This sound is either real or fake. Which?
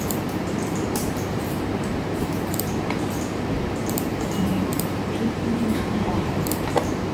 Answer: fake